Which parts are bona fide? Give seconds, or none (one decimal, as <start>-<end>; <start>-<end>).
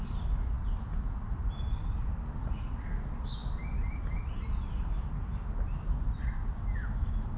0.0-7.4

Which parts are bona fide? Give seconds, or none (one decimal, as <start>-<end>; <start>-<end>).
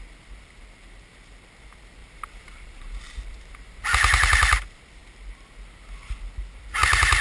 0.0-2.0; 3.8-7.2